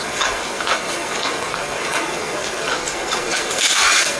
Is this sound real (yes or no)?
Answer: no